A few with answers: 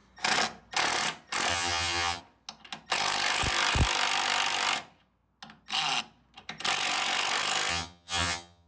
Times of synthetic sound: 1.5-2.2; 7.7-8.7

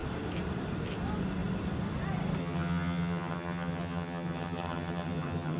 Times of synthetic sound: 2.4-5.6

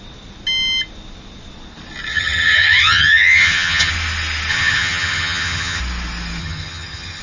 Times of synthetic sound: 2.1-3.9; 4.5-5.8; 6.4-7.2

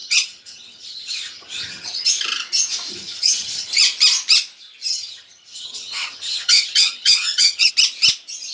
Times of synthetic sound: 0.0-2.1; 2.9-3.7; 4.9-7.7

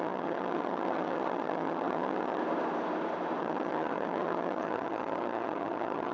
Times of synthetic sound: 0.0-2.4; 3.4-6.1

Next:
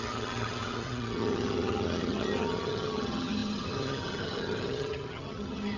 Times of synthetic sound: 0.0-5.8